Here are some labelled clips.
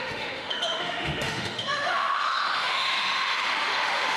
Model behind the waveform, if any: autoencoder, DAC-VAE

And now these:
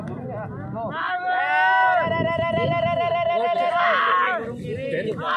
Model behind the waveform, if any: none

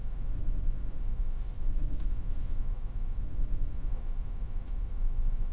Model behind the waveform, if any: autoencoder, DAC-VAE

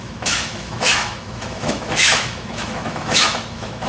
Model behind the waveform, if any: autoencoder, DAC-VAE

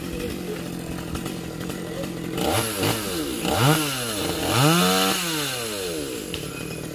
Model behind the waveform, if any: none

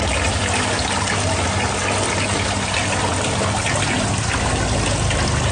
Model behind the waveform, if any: none